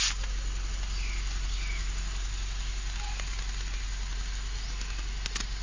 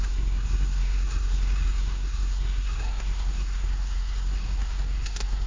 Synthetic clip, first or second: second